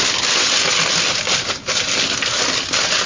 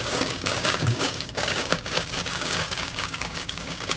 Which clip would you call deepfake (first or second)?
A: second